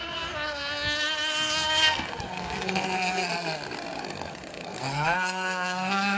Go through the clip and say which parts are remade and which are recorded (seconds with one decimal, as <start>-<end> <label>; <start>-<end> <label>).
0.0-3.3 remade; 3.3-4.0 recorded; 4.0-6.2 remade